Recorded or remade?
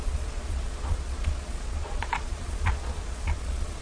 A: remade